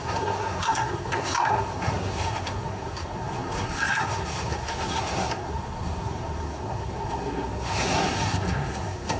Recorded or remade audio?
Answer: remade